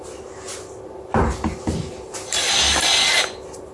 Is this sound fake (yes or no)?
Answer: no